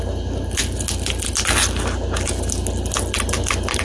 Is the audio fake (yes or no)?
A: no